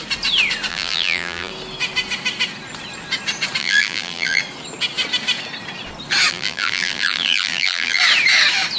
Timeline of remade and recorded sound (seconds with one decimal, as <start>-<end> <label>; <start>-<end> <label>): 0.0-0.7 recorded; 0.7-1.5 remade; 1.5-3.6 recorded; 3.6-4.4 remade; 4.4-6.3 recorded; 6.3-8.0 remade; 8.0-8.8 recorded